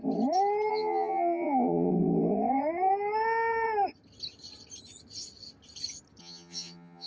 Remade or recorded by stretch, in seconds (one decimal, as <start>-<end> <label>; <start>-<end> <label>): 0.0-0.7 recorded; 0.7-1.9 remade; 1.9-6.2 recorded; 6.2-7.1 remade